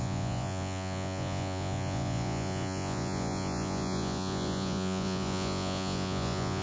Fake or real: fake